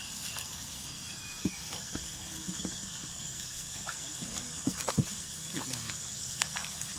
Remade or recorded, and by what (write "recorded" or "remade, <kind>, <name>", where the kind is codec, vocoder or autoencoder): remade, codec, SNAC